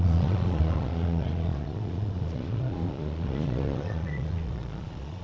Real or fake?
fake